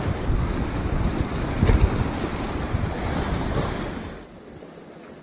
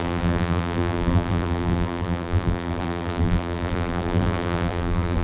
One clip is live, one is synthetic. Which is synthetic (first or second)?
second